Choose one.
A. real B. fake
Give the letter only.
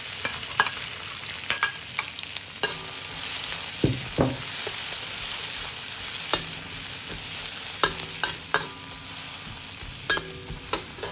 A